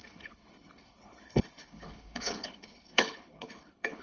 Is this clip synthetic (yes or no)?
yes